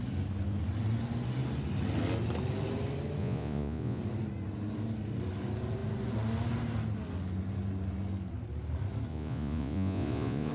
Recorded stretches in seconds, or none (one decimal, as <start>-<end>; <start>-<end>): 0.0-3.2; 4.0-9.1